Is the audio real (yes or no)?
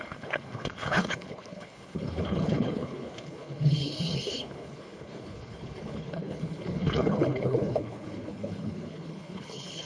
no